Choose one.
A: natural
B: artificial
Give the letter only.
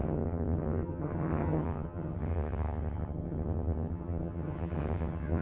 B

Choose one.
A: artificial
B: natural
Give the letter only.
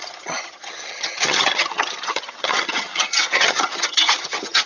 A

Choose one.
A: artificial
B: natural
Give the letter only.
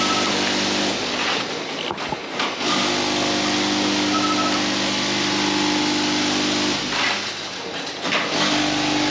B